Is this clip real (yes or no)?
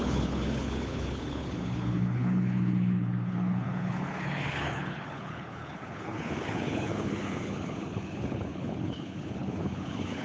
no